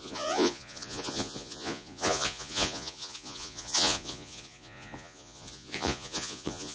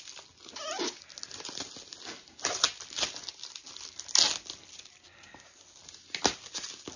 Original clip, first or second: second